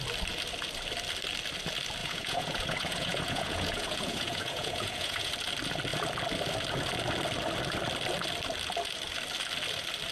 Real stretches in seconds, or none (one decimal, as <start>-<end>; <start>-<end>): 0.0-2.0; 5.3-10.1

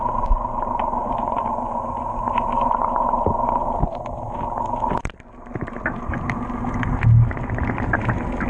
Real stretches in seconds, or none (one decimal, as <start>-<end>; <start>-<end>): 0.0-1.0; 2.1-8.5

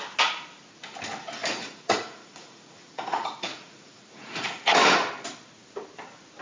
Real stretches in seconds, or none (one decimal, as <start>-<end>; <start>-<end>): 0.0-1.4; 5.1-6.4

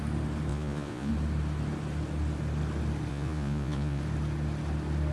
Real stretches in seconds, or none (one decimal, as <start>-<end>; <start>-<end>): 0.0-0.5; 1.1-3.1; 4.0-5.1

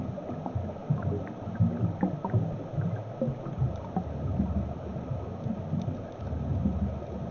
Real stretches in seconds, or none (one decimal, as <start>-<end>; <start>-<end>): 0.0-7.3

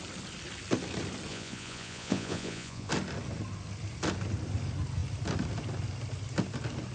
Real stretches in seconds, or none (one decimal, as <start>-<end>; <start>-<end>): 0.0-1.3; 2.9-6.9

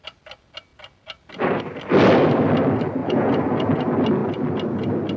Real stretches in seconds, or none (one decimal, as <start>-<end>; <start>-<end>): 0.0-3.0; 3.7-5.2

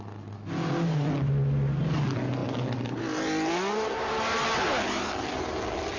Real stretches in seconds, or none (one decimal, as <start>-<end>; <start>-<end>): 0.0-6.0